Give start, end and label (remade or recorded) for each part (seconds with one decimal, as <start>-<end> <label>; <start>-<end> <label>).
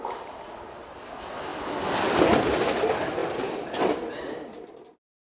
0.0-5.2 recorded